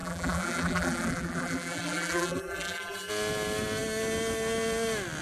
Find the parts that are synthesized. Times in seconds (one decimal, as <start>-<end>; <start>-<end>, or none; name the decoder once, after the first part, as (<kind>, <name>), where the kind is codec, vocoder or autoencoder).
0.0-3.1 (vocoder, BigVGAN v2)